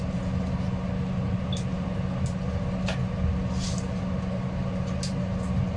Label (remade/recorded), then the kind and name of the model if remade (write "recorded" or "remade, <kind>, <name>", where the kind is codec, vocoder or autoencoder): recorded